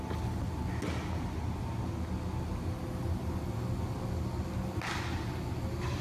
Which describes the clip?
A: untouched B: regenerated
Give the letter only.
A